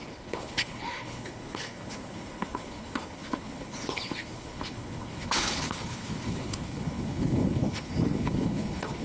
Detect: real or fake fake